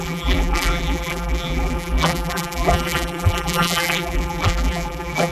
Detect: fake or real fake